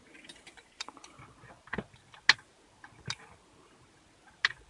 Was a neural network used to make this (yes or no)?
no